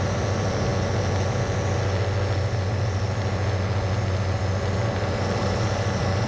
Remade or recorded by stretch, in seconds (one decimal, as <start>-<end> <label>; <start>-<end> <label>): 0.0-0.7 remade; 0.7-4.5 recorded; 4.5-6.3 remade